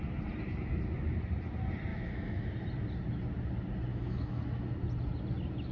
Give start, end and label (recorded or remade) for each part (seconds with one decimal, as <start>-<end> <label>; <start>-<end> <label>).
0.0-1.9 recorded; 1.9-2.5 remade; 2.5-3.9 recorded; 3.9-4.4 remade; 4.4-5.7 recorded